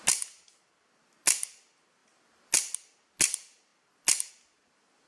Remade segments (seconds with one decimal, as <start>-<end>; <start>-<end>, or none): none